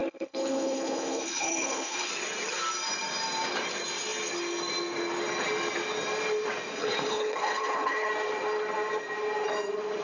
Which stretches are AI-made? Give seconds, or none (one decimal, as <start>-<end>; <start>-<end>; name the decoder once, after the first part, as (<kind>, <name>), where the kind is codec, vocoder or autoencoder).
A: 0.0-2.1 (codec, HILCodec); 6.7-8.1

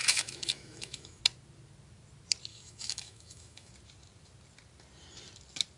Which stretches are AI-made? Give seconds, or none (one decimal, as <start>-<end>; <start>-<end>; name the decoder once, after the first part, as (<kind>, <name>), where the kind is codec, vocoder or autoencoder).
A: 0.0-1.2 (autoencoder, DAC-VAE); 2.5-3.7

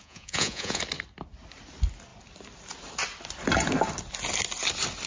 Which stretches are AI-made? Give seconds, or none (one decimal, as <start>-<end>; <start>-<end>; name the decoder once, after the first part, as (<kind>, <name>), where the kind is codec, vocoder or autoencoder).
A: 0.0-0.8 (vocoder, Vocos)

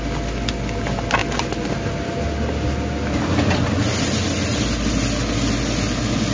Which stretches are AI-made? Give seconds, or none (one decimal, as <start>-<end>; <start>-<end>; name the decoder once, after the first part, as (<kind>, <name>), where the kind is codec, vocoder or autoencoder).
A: none